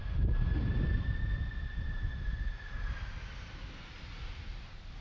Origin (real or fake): real